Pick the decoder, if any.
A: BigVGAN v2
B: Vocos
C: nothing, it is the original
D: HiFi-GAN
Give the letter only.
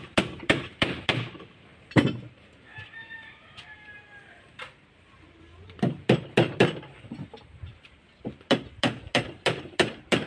A